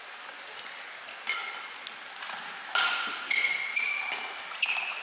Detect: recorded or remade recorded